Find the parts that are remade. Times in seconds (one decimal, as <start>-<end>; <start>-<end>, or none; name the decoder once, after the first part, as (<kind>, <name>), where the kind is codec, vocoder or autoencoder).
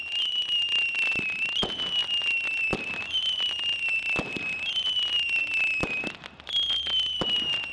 none